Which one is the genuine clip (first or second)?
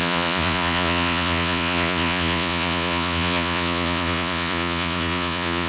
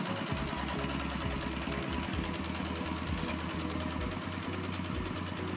second